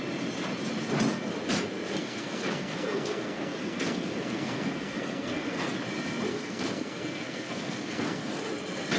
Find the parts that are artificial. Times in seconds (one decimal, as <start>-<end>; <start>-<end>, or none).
2.0-5.7; 6.3-8.4

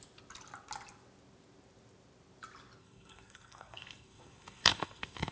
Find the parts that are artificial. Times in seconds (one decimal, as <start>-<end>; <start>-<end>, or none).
2.8-5.3

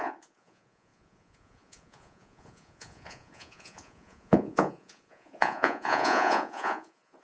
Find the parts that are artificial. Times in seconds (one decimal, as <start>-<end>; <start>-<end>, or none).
0.0-7.2

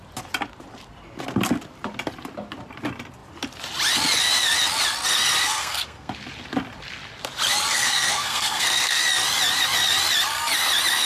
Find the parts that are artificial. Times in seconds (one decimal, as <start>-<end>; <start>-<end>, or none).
5.4-6.1; 7.7-9.0

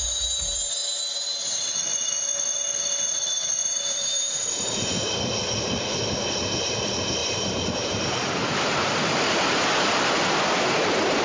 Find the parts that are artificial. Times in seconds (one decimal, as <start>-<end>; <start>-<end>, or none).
3.6-5.2; 7.2-11.2